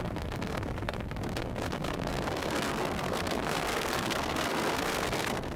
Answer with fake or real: fake